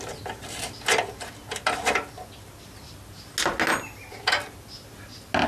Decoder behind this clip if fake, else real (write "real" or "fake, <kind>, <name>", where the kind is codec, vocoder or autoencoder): real